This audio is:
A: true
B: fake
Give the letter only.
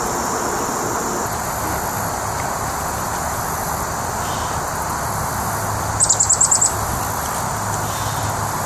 A